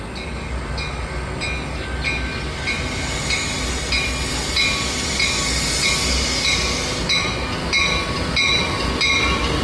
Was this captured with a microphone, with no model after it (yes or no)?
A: yes